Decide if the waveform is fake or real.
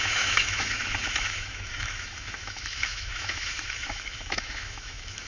fake